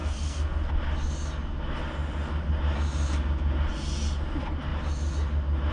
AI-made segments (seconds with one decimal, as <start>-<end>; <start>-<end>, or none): 0.0-0.7